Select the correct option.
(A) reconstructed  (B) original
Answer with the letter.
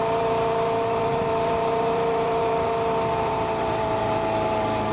A